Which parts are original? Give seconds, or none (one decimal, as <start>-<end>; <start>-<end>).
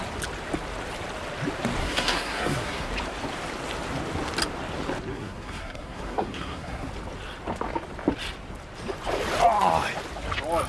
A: 0.0-1.8; 2.9-5.1; 6.9-10.7